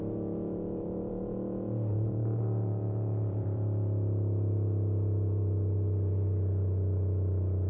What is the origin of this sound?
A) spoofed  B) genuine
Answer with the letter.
A